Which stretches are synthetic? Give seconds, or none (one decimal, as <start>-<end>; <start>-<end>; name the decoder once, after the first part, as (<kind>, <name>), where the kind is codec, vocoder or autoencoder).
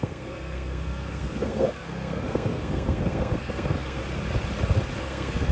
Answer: 0.0-4.0 (codec, SNAC); 5.0-5.5